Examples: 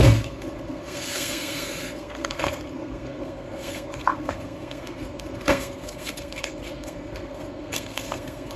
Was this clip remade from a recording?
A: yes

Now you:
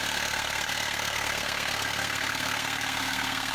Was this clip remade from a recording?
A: yes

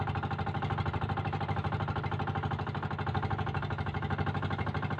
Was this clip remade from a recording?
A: no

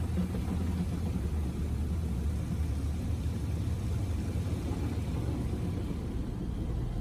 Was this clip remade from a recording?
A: no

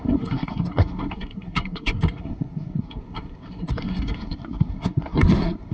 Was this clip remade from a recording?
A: yes